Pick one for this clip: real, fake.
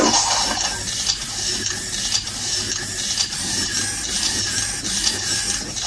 real